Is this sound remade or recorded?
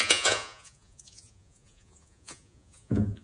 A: remade